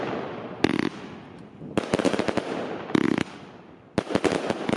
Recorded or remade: recorded